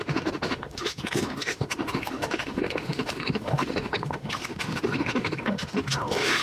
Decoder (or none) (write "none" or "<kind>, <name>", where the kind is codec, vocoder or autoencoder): autoencoder, DAC-VAE